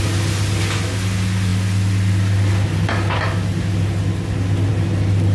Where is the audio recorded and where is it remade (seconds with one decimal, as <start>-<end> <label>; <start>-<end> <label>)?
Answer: 0.0-5.3 recorded